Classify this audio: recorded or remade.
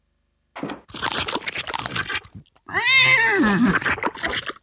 recorded